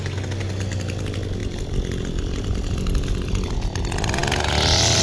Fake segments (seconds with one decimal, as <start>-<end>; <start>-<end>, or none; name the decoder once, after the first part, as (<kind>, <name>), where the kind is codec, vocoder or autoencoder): none